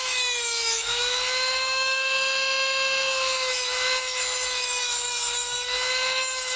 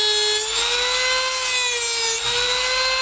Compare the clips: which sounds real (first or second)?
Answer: second